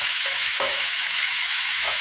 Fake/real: fake